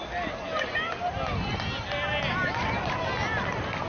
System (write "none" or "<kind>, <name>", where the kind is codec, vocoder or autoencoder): none